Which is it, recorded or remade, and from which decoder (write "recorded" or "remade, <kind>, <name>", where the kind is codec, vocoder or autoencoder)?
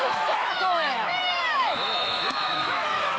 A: remade, autoencoder, DAC-VAE